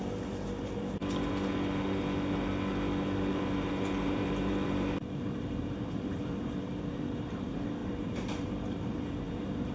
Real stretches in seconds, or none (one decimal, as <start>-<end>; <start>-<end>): 1.0-3.3